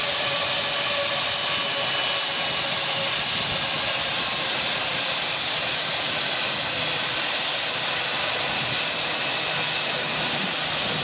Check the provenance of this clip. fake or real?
real